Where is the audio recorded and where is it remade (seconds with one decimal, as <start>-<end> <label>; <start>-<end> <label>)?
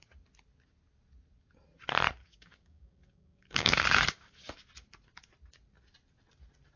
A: 0.0-2.2 recorded; 2.2-4.5 remade; 4.5-6.8 recorded